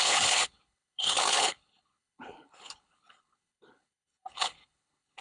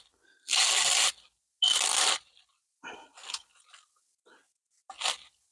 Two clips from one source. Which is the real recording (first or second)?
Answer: second